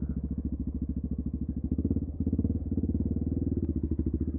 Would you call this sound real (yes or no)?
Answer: yes